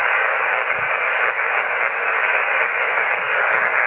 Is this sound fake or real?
fake